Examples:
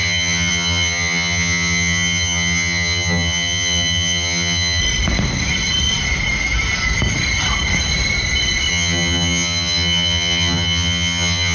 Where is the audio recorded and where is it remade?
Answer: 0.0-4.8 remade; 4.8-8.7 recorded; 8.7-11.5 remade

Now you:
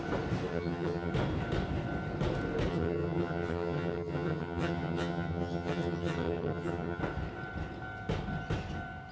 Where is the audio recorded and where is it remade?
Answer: 0.0-0.5 recorded; 0.5-1.1 remade; 1.1-2.7 recorded; 2.7-7.0 remade; 7.0-9.1 recorded

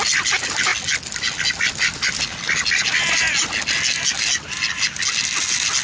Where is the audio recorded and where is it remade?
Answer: 0.0-5.8 recorded

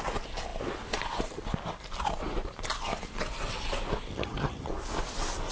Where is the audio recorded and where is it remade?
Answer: 0.0-4.1 recorded; 4.1-4.7 remade; 4.7-5.5 recorded

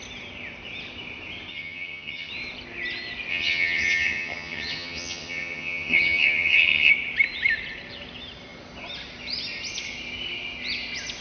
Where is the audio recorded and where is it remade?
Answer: 0.0-1.5 recorded; 1.5-2.3 remade; 2.3-3.3 recorded; 3.3-6.9 remade; 6.9-11.2 recorded

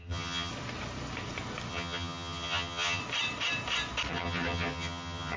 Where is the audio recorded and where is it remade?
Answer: 0.0-0.5 remade; 0.5-1.7 recorded; 1.7-3.0 remade; 3.0-4.1 recorded; 4.1-5.4 remade

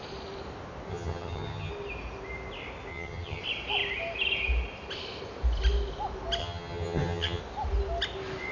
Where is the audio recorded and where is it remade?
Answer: 0.0-0.9 recorded; 0.9-1.7 remade; 1.7-2.9 recorded; 2.9-3.4 remade; 3.4-6.4 recorded; 6.4-7.4 remade; 7.4-8.5 recorded